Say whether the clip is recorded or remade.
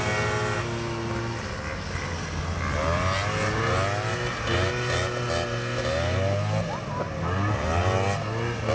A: recorded